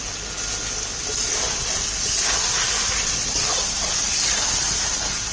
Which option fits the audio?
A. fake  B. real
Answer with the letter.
B